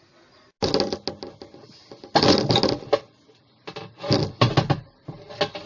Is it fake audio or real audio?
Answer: real